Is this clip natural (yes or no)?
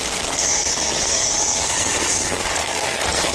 no